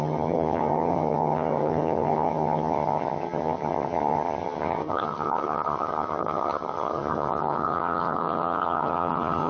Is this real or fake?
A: fake